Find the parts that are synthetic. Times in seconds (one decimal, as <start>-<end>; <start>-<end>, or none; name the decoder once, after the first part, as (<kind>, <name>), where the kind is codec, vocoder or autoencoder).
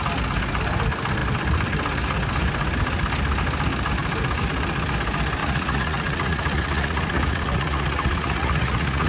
5.4-9.1 (vocoder, Vocos)